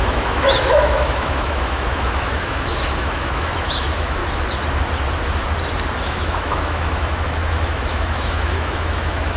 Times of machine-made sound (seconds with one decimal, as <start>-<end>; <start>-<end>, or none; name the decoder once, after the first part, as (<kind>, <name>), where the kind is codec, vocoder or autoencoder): 0.0-4.2 (autoencoder, DAC-VAE); 6.0-9.4